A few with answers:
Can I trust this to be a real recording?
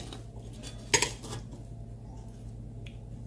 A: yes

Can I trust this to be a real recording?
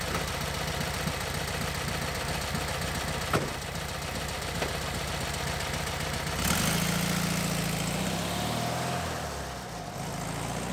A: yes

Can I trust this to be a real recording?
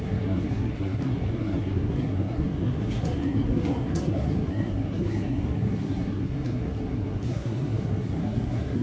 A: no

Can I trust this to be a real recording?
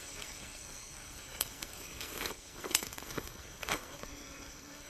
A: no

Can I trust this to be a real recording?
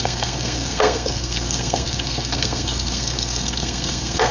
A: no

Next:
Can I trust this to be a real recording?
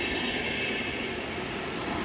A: yes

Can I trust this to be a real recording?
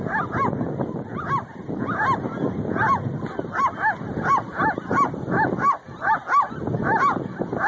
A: yes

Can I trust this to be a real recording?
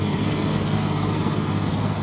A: no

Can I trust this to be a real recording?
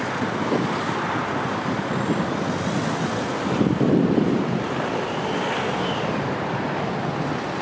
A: yes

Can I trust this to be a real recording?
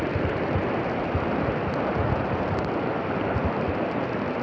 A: yes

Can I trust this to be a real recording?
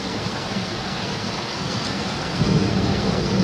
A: no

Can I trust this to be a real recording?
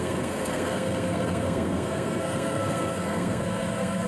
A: no